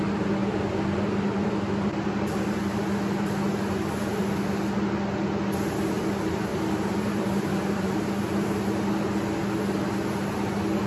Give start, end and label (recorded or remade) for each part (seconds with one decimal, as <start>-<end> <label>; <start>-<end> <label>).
0.0-6.5 recorded; 6.5-8.1 remade; 8.1-10.9 recorded